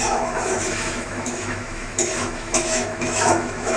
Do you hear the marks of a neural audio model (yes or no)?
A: yes